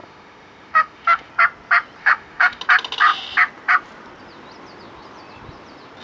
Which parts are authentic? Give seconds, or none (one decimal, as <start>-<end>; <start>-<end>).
1.3-2.0; 2.6-6.0